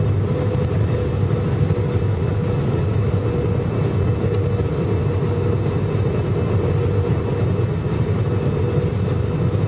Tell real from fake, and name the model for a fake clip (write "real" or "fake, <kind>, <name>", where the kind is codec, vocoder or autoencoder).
real